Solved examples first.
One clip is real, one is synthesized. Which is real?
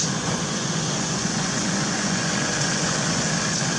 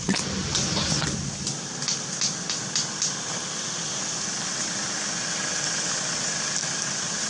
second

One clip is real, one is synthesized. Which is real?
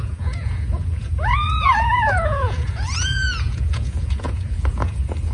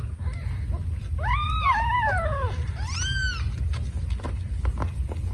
second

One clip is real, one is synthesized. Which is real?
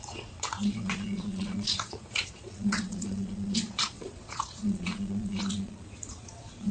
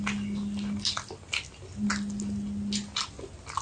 second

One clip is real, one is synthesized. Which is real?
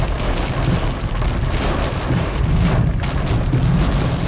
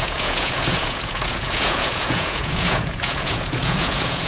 first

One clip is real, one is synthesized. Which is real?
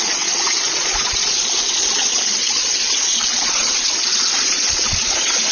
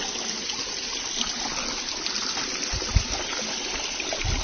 second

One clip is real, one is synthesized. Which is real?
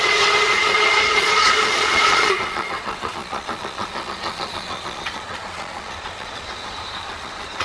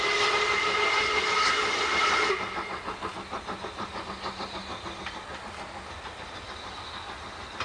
second